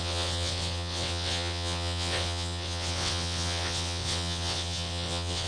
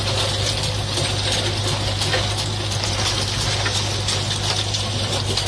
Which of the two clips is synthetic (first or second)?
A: first